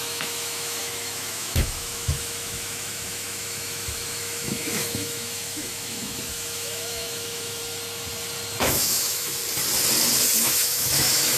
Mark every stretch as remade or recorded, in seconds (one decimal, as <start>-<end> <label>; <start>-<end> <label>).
0.0-7.6 remade; 7.6-8.6 recorded; 8.6-9.4 remade; 9.4-10.4 recorded; 10.4-11.4 remade